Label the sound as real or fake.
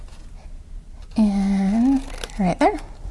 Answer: real